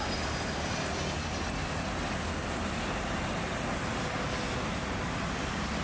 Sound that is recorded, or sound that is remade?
recorded